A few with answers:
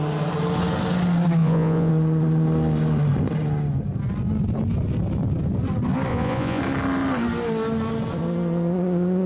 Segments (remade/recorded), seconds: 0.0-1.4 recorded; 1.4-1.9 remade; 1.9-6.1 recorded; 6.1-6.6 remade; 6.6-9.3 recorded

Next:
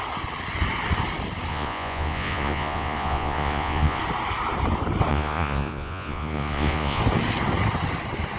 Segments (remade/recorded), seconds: 0.0-1.5 recorded; 1.5-4.0 remade; 4.0-5.1 recorded; 5.1-7.0 remade; 7.0-8.4 recorded

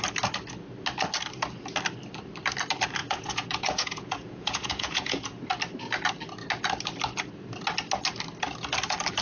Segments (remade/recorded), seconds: 0.0-3.0 recorded; 3.0-5.4 remade; 5.4-9.2 recorded

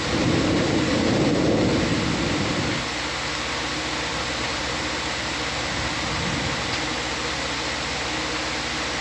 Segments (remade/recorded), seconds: 0.0-9.0 recorded

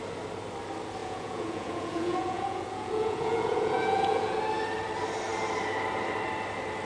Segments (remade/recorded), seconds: 0.0-1.0 recorded; 1.0-4.4 remade; 4.4-6.8 recorded